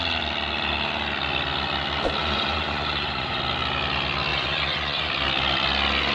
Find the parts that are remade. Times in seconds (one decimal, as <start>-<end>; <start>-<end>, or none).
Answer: 2.2-3.4; 4.3-5.1